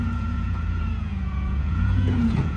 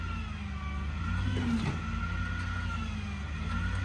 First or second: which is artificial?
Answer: first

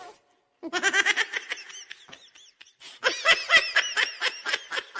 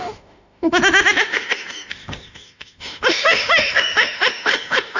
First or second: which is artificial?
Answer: second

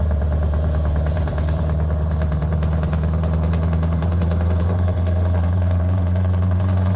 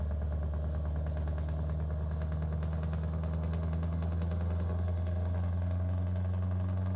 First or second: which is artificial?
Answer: first